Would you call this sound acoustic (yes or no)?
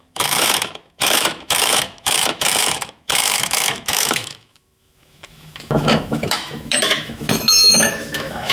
no